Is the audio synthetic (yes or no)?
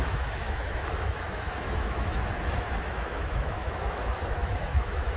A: yes